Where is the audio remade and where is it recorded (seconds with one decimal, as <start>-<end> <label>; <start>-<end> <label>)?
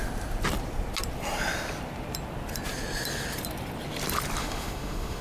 0.0-4.4 recorded; 4.4-5.2 remade